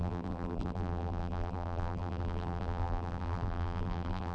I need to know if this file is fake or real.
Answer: fake